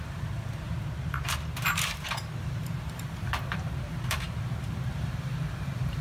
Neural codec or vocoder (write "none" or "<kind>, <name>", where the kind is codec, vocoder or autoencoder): vocoder, BigVGAN v2